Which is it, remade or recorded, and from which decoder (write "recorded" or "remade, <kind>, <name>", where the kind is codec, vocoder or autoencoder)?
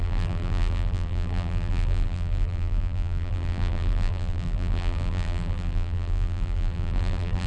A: remade, vocoder, BigVGAN v2